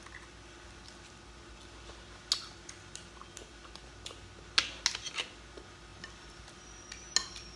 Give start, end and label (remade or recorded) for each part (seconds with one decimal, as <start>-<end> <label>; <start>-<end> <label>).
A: 0.0-7.6 recorded